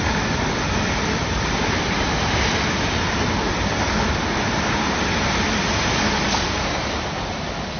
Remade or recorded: recorded